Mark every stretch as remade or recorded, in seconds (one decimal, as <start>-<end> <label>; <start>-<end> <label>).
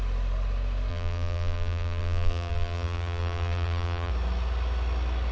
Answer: 0.0-0.9 recorded; 0.9-4.1 remade; 4.1-5.3 recorded